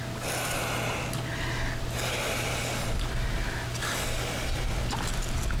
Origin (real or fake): real